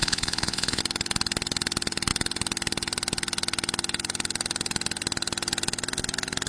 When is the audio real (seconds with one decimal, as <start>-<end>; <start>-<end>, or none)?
0.8-6.5